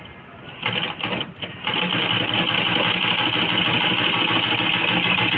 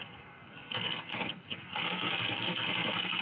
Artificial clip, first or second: second